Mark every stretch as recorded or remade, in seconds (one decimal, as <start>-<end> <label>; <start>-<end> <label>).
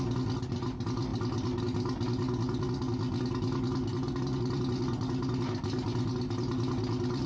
0.0-1.1 recorded; 1.1-1.6 remade; 1.6-7.3 recorded